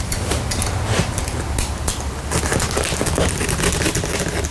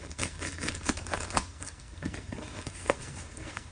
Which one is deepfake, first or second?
second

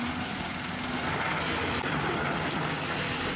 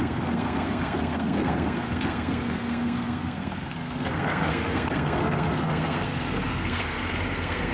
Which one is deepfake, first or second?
second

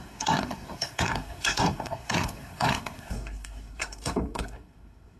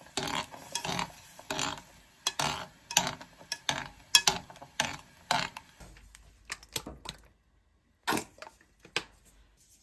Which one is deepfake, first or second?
first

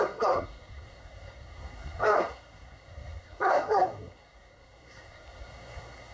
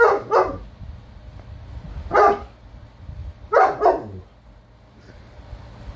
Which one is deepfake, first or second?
first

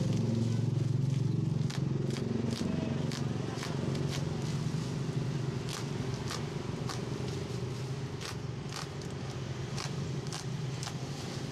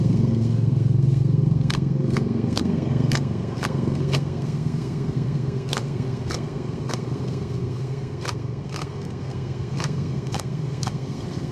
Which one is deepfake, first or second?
second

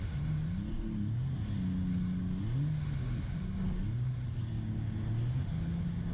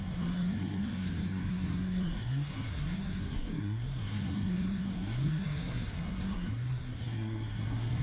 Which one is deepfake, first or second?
second